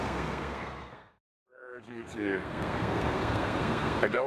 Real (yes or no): no